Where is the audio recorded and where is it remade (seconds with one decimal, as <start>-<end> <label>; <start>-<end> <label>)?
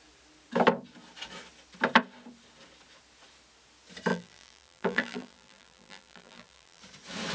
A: 0.0-4.1 recorded; 4.1-6.8 remade; 6.8-7.3 recorded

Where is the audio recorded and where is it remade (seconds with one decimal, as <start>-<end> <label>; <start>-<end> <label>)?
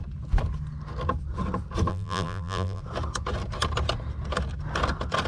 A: 0.0-1.9 recorded; 1.9-2.8 remade; 2.8-5.3 recorded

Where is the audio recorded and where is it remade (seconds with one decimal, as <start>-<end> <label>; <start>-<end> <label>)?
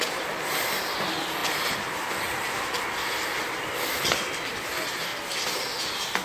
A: 0.0-1.4 recorded; 1.4-2.8 remade; 2.8-6.2 recorded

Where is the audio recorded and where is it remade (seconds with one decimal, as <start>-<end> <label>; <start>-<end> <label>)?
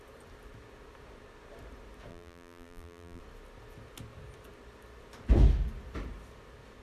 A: 0.0-2.1 recorded; 2.1-3.2 remade; 3.2-6.8 recorded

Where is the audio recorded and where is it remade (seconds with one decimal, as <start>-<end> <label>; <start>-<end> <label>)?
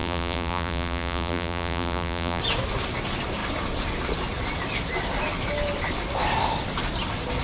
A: 0.0-2.4 remade; 2.4-7.4 recorded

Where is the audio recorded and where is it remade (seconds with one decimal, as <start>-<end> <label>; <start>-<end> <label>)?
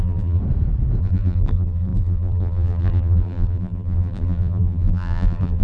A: 0.0-0.4 remade; 0.4-1.0 recorded; 1.0-5.6 remade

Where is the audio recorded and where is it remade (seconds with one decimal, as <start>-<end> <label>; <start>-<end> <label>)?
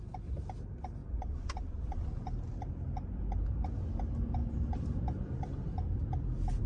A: 0.0-1.0 recorded; 1.0-3.6 remade; 3.6-4.4 recorded; 4.4-6.7 remade